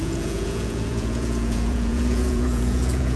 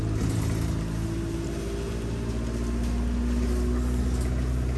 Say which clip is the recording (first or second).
second